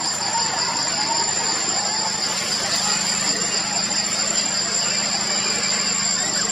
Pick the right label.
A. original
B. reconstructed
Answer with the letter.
A